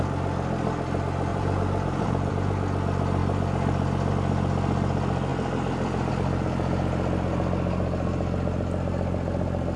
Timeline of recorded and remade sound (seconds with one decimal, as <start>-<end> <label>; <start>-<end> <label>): 0.0-1.3 recorded; 1.3-2.3 remade; 2.3-9.8 recorded